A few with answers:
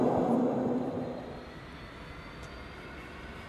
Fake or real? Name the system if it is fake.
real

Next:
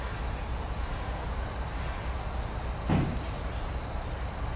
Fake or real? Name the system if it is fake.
real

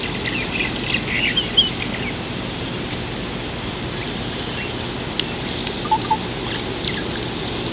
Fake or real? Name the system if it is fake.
real